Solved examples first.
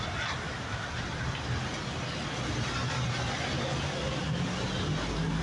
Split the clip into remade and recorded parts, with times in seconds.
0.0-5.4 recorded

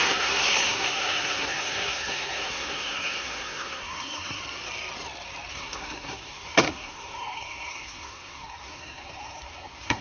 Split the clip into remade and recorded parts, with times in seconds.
0.0-4.4 remade; 4.4-5.5 recorded; 5.5-10.0 remade

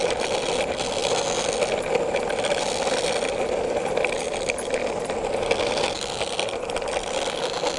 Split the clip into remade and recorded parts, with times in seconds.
0.0-7.8 recorded

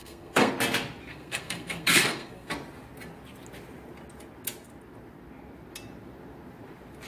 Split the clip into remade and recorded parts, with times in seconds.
0.0-0.5 remade; 0.5-1.1 recorded; 1.1-2.5 remade; 2.5-7.1 recorded

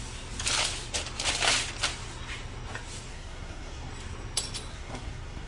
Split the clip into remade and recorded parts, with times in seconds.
0.0-3.1 recorded; 3.1-3.9 remade; 3.9-4.7 recorded; 4.7-5.5 remade